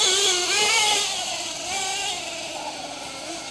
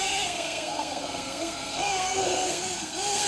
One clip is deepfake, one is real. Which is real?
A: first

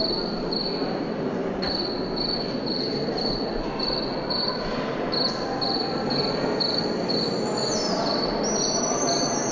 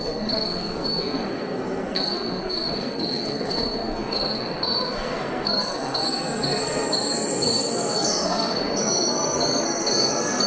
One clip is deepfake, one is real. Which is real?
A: first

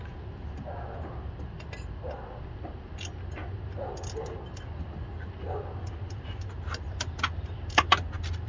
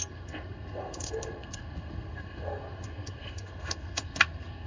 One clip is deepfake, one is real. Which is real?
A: first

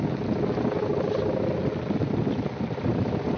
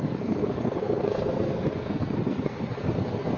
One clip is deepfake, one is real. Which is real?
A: first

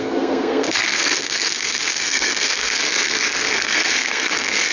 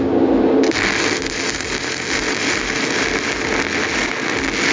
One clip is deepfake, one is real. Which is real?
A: second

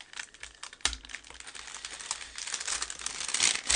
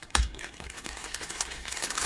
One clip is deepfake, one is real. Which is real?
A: first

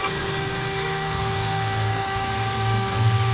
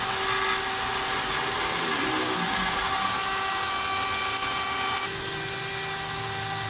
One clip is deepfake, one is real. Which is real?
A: second